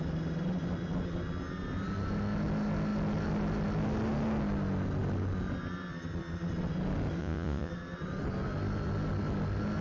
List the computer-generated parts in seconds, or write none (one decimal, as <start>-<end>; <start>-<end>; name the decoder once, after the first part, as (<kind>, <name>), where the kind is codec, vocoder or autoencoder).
7.2-7.7 (vocoder, Vocos)